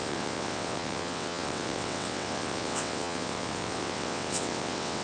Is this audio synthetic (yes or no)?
yes